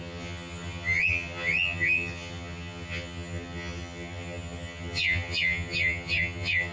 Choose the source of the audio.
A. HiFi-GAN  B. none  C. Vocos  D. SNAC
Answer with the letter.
A